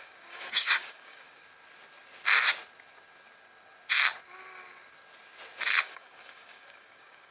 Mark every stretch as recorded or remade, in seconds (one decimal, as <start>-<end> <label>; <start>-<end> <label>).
0.0-1.4 remade; 1.4-5.8 recorded; 5.8-7.3 remade